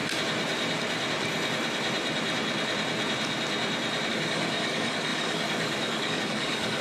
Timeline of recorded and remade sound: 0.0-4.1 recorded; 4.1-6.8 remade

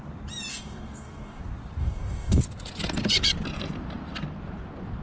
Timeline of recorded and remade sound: 0.0-0.5 recorded; 0.5-1.4 remade; 1.4-1.8 recorded; 1.8-2.4 remade; 2.4-5.0 recorded

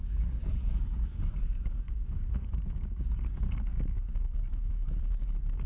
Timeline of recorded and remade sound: 0.0-5.7 remade